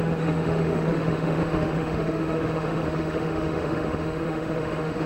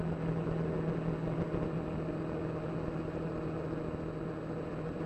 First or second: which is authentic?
second